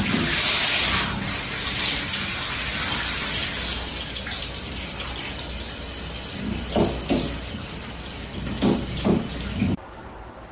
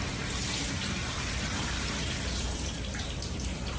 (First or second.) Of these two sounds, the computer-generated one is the second